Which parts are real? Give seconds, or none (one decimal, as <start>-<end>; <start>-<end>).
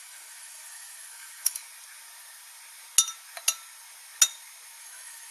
1.6-4.8